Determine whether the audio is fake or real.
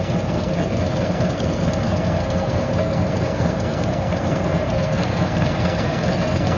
fake